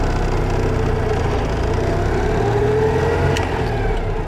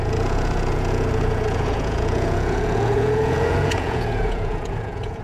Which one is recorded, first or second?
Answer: first